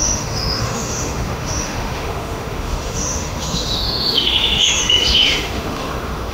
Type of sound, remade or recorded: remade